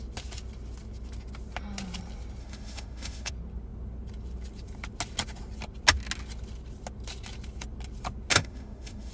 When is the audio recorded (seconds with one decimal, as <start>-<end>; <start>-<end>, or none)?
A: 0.0-2.4; 3.3-8.3